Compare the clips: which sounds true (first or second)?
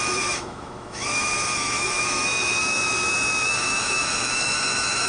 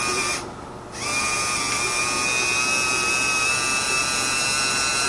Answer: second